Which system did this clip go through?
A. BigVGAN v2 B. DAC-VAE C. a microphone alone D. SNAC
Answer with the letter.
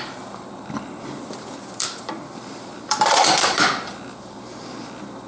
A